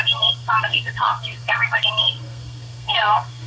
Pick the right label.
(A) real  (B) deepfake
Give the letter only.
B